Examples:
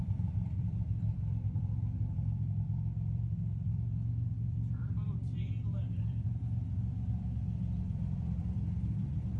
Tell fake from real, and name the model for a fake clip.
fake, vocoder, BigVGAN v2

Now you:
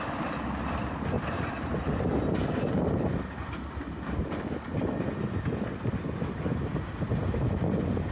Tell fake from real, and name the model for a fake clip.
fake, vocoder, BigVGAN v2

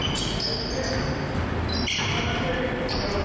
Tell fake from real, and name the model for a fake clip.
real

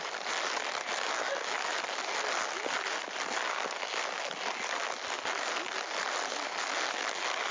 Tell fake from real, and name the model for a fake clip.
real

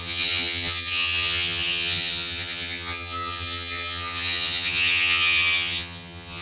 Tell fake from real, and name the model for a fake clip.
fake, vocoder, HiFi-GAN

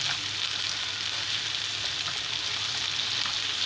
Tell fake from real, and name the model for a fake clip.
real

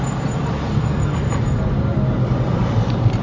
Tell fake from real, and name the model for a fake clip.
real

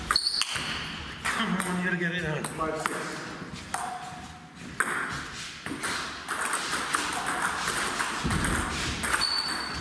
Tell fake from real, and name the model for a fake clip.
real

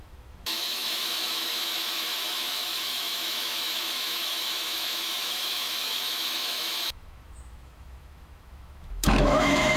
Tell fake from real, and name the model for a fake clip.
fake, autoencoder, DAC-VAE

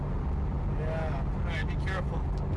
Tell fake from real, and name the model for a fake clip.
real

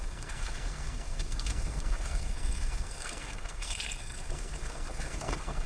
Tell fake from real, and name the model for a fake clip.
fake, codec, SNAC